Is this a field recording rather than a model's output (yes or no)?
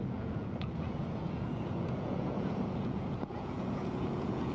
no